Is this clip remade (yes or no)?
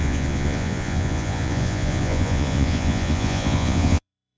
yes